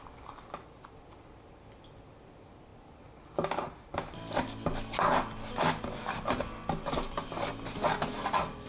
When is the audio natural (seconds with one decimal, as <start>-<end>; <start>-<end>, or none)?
0.0-8.7